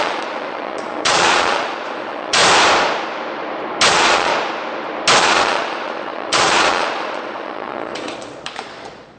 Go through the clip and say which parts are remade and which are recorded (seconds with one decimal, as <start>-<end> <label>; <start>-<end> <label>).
0.0-2.4 remade; 2.4-3.9 recorded; 3.9-4.3 remade; 4.3-5.2 recorded; 5.2-9.2 remade